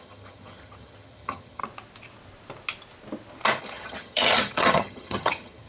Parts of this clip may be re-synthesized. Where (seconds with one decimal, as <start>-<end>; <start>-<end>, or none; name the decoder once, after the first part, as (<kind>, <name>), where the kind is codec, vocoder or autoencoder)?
0.0-1.6 (vocoder, HiFi-GAN); 3.6-5.7